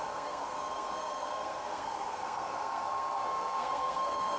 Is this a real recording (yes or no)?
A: no